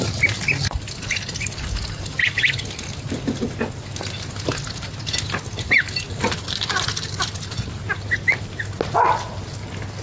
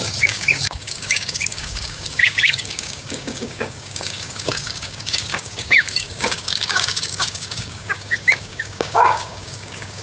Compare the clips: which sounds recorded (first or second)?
first